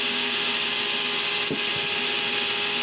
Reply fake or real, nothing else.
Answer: real